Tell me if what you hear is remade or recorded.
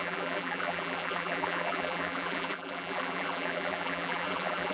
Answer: remade